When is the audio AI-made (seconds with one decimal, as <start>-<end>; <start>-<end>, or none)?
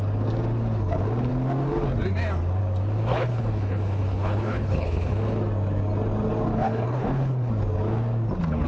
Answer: 3.1-5.1; 6.5-7.5